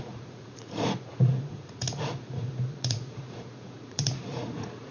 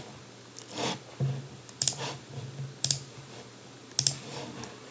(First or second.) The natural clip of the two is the second